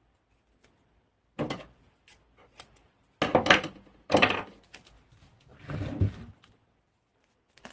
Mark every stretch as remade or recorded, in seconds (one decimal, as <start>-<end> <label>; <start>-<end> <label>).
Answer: 0.0-3.3 recorded; 3.3-4.5 remade; 4.5-7.7 recorded